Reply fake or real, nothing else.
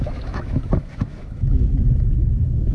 fake